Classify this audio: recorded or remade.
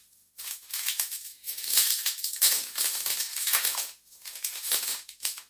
remade